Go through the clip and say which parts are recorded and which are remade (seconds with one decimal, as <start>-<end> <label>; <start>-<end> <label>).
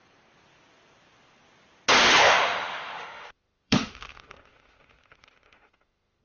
0.0-2.2 recorded; 2.2-6.2 remade